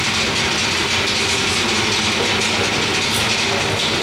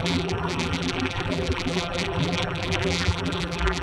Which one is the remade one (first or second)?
second